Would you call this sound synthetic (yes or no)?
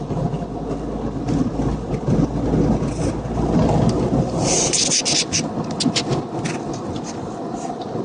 no